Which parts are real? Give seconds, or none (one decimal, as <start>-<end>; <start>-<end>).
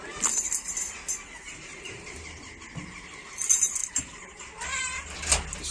0.0-5.7